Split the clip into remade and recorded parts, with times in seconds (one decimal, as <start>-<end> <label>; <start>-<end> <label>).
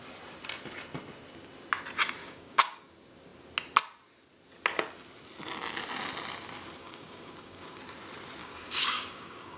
0.0-2.2 recorded; 2.2-2.8 remade; 2.8-6.8 recorded; 6.8-7.8 remade; 7.8-8.4 recorded; 8.4-9.6 remade